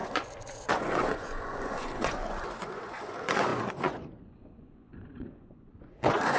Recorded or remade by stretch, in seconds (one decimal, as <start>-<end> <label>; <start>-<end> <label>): 0.0-6.4 remade